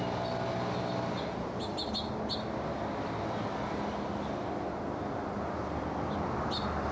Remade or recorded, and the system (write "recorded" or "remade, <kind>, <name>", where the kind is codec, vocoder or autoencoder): recorded